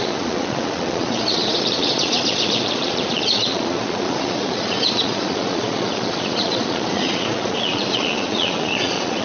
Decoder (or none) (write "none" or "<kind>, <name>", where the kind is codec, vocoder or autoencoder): vocoder, Vocos